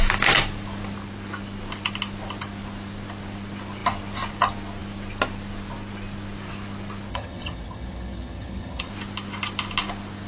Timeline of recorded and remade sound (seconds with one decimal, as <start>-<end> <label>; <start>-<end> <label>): 0.0-7.1 recorded; 7.1-8.9 remade; 8.9-10.3 recorded